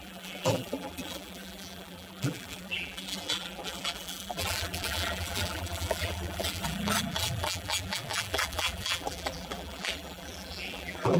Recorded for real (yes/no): no